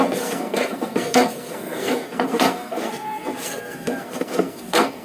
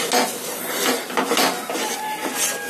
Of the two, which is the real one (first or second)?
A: second